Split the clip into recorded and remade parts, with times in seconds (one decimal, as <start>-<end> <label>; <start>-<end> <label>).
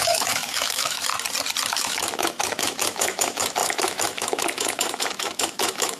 0.0-1.1 remade; 1.1-1.7 recorded; 1.7-6.0 remade